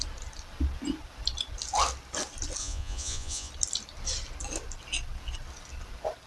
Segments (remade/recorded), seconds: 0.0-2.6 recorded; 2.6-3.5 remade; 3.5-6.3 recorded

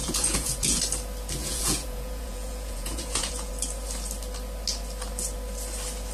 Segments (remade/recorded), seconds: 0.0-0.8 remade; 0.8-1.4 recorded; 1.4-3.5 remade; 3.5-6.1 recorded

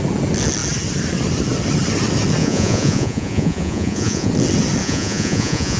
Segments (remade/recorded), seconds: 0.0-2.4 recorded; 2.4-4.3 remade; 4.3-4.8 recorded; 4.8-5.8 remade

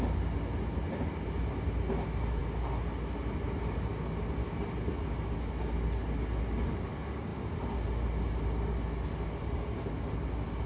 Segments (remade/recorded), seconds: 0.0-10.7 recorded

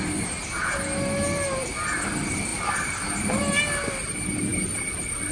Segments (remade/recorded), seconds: 0.0-5.3 recorded

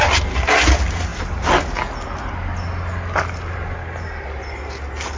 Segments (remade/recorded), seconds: 0.0-5.2 recorded